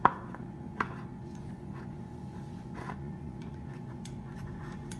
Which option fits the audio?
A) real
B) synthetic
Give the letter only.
B